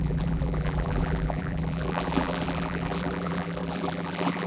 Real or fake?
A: fake